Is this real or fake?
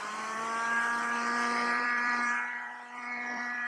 fake